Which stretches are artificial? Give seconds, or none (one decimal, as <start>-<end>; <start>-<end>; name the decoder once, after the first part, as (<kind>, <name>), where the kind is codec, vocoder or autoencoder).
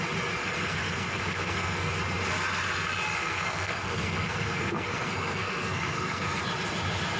0.4-1.9 (codec, SNAC); 3.2-6.4